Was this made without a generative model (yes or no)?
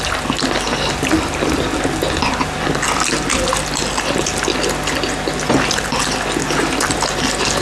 yes